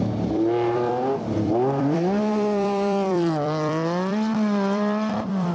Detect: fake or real fake